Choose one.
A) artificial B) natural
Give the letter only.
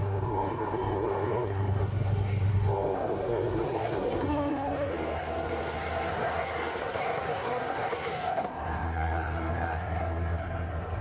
A